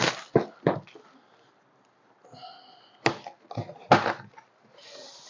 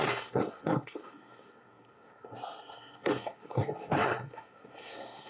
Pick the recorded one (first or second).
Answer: first